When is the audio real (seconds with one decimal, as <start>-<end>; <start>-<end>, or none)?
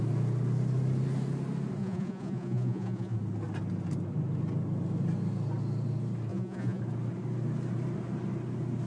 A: 0.0-1.8; 3.2-6.3; 6.8-8.9